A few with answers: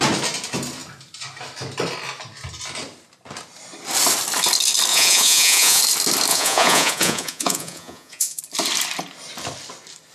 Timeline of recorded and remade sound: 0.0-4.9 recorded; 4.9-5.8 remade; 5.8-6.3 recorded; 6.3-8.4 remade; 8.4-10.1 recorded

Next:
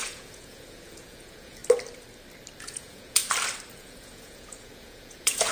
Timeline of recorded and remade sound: 0.0-1.6 remade; 1.6-2.6 recorded; 2.6-3.2 remade; 3.2-3.7 recorded; 3.7-5.5 remade

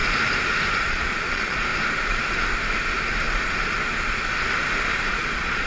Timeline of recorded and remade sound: 0.0-0.7 recorded; 0.7-1.7 remade; 1.7-5.1 recorded; 5.1-5.7 remade

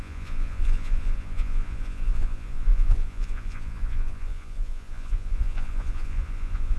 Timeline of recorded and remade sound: 0.0-6.8 remade